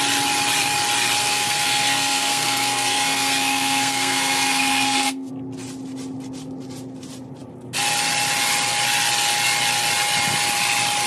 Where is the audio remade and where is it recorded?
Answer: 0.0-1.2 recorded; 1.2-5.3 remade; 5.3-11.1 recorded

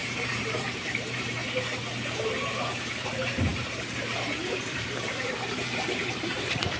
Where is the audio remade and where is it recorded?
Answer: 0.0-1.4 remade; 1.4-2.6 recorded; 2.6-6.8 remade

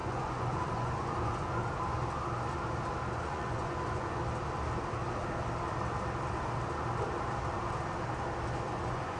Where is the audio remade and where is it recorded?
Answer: 0.0-1.6 remade; 1.6-3.2 recorded; 3.2-4.2 remade; 4.2-8.7 recorded; 8.7-9.2 remade

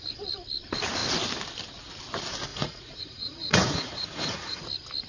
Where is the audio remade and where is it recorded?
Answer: 0.0-2.5 recorded; 2.5-4.6 remade; 4.6-5.1 recorded

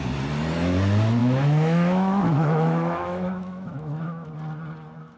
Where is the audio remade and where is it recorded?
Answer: 0.0-1.2 recorded; 1.2-4.3 remade; 4.3-5.2 recorded

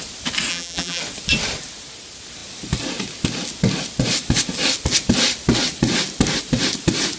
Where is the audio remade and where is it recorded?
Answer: 0.0-0.5 recorded; 0.5-1.0 remade; 1.0-7.2 recorded

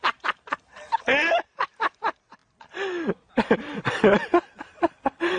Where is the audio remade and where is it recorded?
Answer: 0.0-5.4 recorded

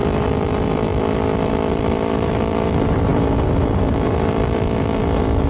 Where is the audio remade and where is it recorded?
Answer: 0.0-0.5 recorded; 0.5-0.9 remade; 0.9-1.5 recorded; 1.5-5.5 remade